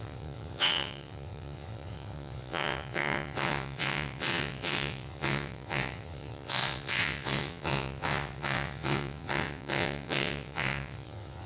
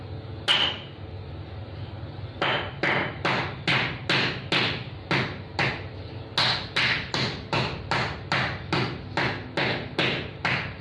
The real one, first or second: second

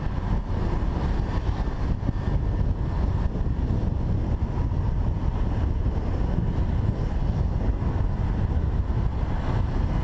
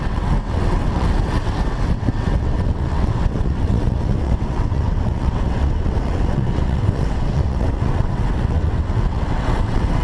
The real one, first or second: first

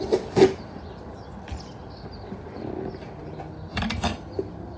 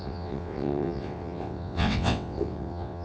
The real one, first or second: first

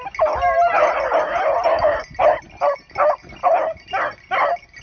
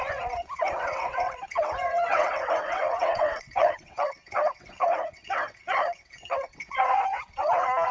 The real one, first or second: first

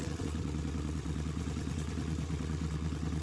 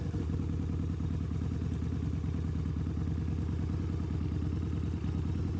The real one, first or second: second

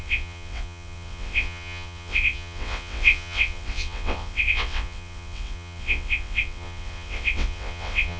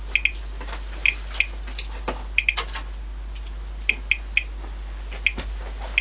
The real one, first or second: second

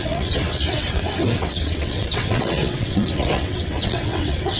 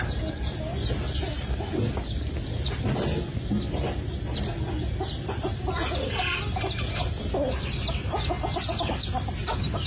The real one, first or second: second